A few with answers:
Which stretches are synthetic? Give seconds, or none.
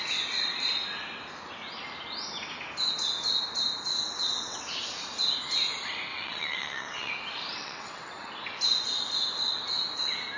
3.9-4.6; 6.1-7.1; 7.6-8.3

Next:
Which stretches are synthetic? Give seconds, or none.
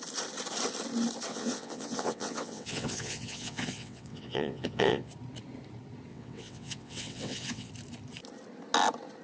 1.3-5.1; 6.1-7.7